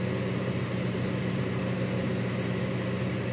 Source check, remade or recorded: recorded